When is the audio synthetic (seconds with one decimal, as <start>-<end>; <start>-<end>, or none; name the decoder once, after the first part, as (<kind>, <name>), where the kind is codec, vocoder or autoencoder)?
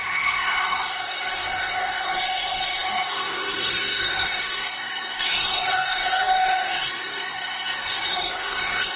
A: 0.0-9.0 (codec, SNAC)